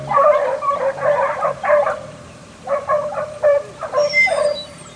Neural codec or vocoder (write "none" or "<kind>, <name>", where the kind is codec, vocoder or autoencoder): vocoder, BigVGAN v2